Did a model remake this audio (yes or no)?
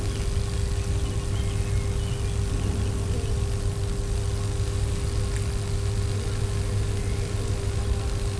no